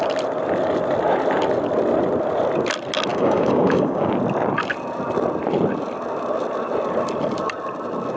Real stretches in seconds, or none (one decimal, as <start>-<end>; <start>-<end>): 0.0-3.1; 4.1-8.2